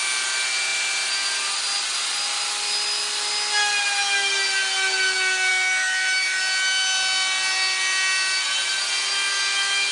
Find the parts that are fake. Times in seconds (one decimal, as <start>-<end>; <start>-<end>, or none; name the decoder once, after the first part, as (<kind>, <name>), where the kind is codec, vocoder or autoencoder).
5.5-6.4 (autoencoder, DAC-VAE)

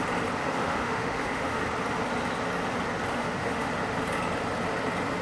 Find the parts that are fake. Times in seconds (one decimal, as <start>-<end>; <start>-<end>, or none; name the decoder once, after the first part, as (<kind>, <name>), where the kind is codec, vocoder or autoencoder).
0.4-1.6 (autoencoder, DAC-VAE); 3.1-3.7

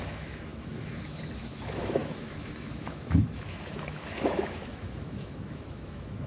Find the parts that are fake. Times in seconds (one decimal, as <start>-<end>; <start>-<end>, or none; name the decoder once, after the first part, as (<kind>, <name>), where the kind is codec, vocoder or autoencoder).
0.0-6.3 (autoencoder, DAC-VAE)